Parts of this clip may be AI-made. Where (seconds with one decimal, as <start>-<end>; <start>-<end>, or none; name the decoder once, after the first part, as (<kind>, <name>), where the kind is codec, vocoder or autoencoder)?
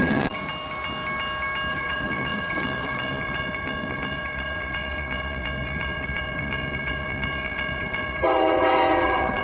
0.0-0.4 (vocoder, WaveNeXt); 1.7-9.4